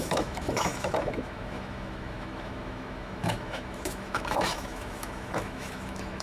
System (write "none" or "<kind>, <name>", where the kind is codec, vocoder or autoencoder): autoencoder, DAC-VAE